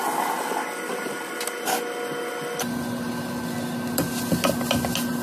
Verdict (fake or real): real